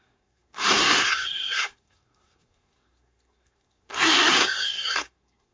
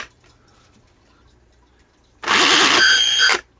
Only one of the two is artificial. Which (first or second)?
first